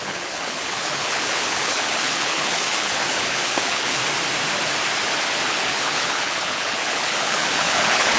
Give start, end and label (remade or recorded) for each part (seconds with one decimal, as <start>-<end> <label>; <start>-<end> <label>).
0.0-4.0 remade; 4.0-5.5 recorded; 5.5-8.2 remade